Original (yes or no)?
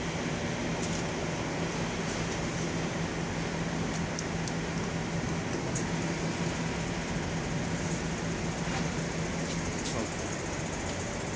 yes